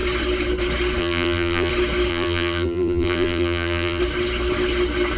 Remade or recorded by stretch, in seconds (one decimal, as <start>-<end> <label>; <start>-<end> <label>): 0.0-1.0 recorded; 1.0-1.7 remade; 1.7-2.1 recorded; 2.1-4.0 remade; 4.0-5.2 recorded